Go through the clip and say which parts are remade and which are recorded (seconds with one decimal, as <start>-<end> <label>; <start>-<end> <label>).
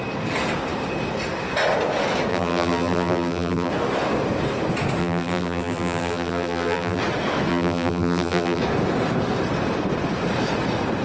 0.0-2.3 recorded; 2.3-3.7 remade; 3.7-5.0 recorded; 5.0-7.0 remade; 7.0-7.5 recorded; 7.5-8.6 remade; 8.6-11.0 recorded